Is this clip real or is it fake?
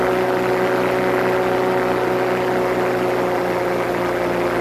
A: real